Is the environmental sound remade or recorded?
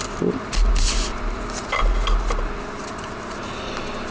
recorded